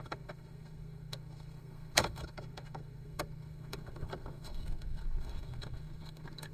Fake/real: fake